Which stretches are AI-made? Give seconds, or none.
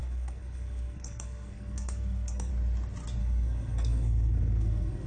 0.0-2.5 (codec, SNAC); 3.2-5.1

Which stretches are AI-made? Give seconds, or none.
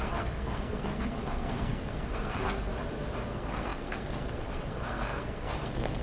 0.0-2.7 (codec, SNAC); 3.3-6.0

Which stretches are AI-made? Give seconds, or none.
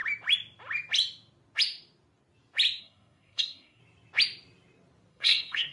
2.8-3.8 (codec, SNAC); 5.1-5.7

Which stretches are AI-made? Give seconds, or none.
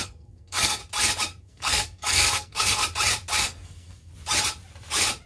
0.0-0.8 (codec, SNAC); 1.4-2.8; 3.4-4.1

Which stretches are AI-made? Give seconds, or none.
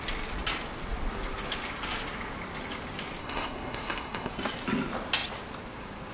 3.2-4.3 (codec, SNAC)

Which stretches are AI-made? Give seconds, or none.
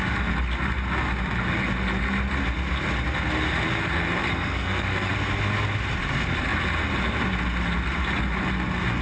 4.3-5.1 (codec, SNAC)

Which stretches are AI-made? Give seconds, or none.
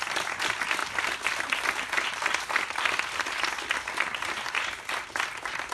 none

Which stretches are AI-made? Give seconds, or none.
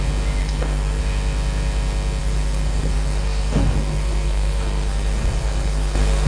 0.4-1.0 (codec, SNAC); 2.2-6.3